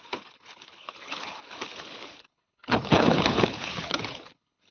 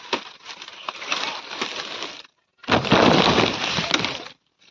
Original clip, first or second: second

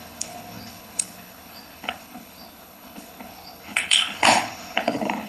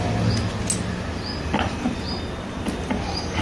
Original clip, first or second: second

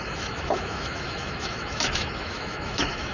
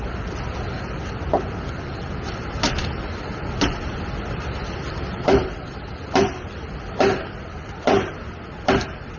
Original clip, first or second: second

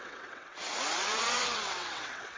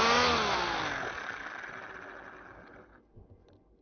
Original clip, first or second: second